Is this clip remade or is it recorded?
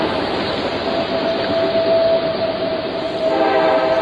recorded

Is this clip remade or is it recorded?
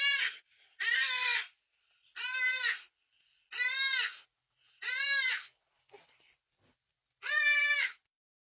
recorded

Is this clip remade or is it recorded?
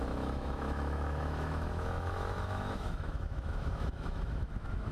remade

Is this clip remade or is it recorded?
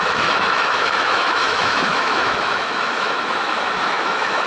remade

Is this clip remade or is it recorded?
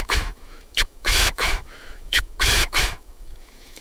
remade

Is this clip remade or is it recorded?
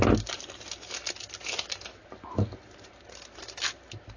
recorded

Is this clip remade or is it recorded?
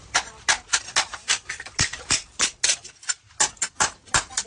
recorded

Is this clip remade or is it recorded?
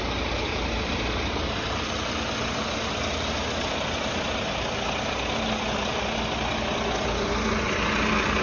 recorded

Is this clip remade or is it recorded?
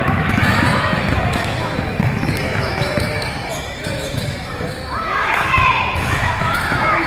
remade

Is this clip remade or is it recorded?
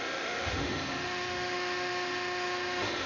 remade